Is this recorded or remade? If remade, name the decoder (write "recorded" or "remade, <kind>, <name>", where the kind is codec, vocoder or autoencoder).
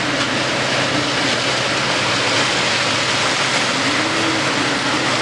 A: recorded